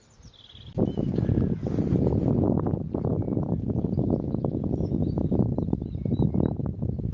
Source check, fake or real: real